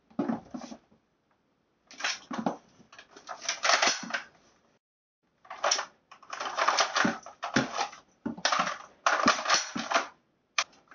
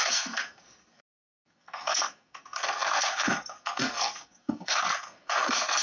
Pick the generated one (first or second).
second